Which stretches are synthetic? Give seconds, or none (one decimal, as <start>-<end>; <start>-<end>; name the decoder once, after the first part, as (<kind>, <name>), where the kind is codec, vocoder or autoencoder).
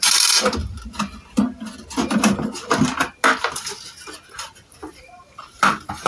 0.0-0.6 (vocoder, BigVGAN v2); 4.3-6.1